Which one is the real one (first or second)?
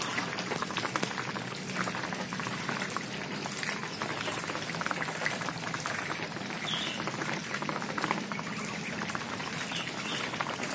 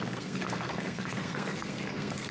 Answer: first